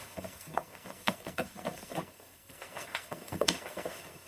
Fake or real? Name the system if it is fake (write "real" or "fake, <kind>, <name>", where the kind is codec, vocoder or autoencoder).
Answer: fake, codec, SNAC